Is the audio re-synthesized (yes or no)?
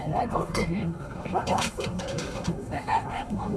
yes